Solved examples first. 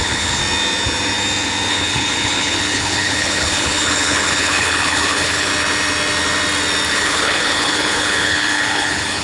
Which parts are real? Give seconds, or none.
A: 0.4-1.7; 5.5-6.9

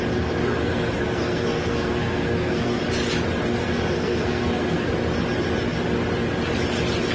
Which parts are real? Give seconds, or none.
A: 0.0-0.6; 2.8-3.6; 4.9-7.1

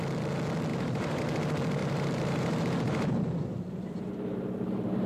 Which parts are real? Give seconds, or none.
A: 0.0-0.7; 1.2-1.8

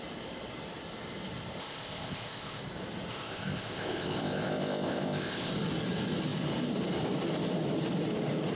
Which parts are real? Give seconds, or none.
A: 0.0-1.6; 2.6-3.1; 5.5-8.6

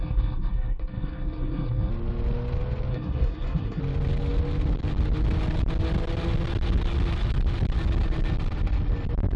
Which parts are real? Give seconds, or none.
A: 1.9-2.9; 3.8-9.4